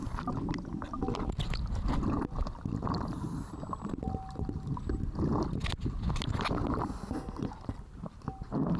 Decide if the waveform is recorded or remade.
recorded